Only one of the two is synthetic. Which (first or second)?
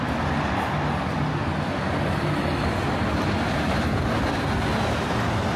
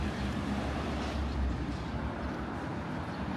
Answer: second